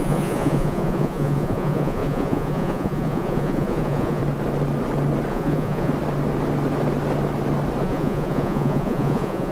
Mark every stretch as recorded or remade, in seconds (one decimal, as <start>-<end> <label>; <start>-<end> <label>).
0.0-4.2 remade; 4.2-5.3 recorded; 5.3-5.9 remade; 5.9-7.8 recorded; 7.8-9.5 remade